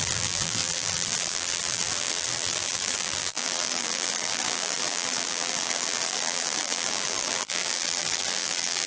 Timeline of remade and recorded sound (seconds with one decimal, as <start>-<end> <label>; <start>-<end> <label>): 0.0-8.9 remade